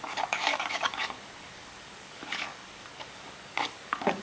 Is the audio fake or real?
fake